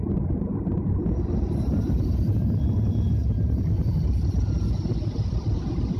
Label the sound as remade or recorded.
recorded